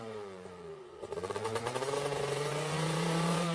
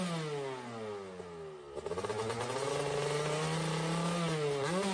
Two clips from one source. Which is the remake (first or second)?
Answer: first